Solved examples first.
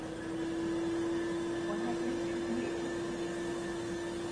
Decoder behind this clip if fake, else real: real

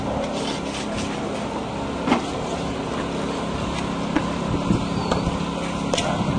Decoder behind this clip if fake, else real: real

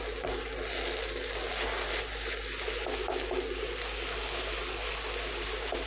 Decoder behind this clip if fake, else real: real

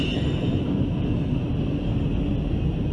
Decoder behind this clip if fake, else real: real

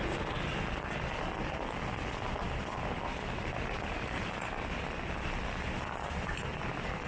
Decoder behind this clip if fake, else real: real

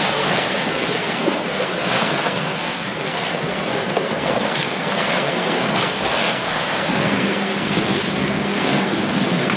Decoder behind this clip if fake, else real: fake, codec, SNAC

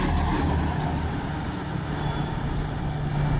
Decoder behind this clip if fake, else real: real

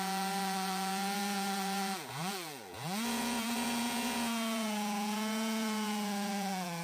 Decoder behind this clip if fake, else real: fake, vocoder, Vocos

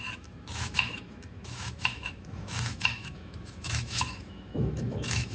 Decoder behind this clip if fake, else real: fake, autoencoder, DAC-VAE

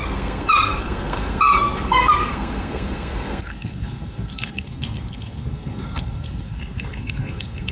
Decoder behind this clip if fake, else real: fake, codec, SNAC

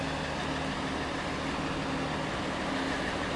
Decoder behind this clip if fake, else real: real